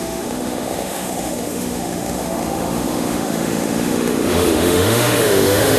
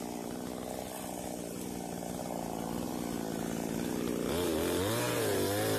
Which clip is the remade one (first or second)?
first